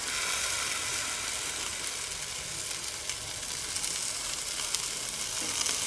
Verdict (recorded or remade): recorded